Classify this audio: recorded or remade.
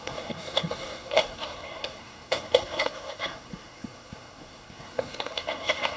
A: remade